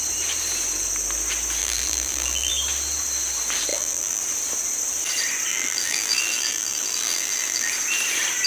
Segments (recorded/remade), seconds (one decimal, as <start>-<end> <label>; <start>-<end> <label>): 0.0-1.6 recorded; 1.6-2.5 remade; 2.5-3.7 recorded; 3.7-4.2 remade; 4.2-5.5 recorded; 5.5-7.7 remade; 7.7-8.5 recorded